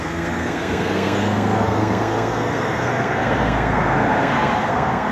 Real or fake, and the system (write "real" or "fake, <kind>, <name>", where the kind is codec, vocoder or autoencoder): fake, codec, SNAC